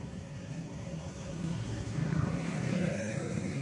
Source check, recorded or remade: remade